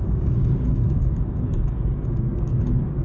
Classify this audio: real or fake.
fake